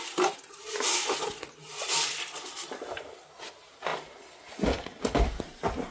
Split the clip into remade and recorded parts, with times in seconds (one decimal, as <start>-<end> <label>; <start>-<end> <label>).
0.0-5.9 recorded